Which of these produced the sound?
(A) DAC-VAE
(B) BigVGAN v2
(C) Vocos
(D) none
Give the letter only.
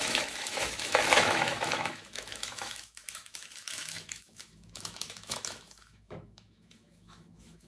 A